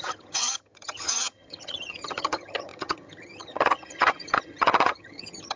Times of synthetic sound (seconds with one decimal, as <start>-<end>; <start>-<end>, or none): 0.0-5.6